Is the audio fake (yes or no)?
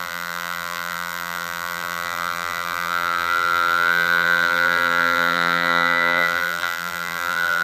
yes